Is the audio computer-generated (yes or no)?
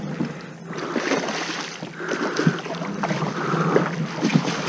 no